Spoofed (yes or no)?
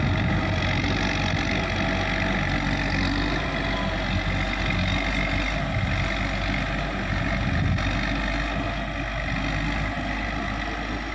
no